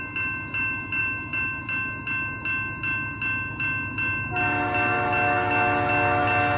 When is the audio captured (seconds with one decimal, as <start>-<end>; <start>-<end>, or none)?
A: 0.0-6.6

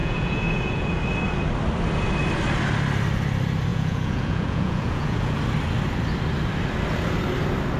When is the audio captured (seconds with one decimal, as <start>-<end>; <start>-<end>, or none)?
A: 1.0-3.7; 5.4-7.8

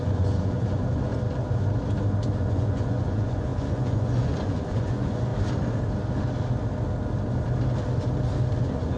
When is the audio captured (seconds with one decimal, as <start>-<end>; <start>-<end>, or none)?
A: 1.1-2.4; 5.3-8.6